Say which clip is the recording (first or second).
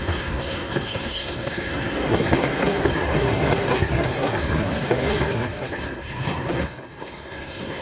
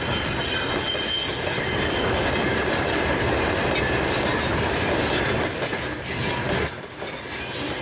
second